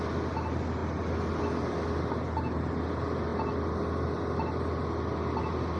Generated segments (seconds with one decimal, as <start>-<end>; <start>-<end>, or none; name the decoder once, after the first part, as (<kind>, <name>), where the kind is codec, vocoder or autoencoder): none